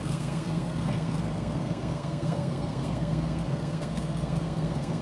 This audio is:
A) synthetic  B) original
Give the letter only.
A